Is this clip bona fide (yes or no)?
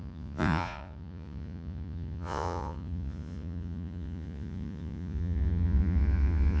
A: no